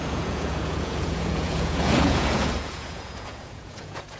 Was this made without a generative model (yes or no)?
no